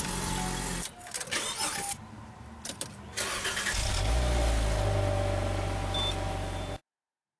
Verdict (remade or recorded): recorded